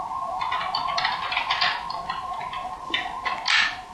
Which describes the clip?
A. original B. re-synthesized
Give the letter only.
A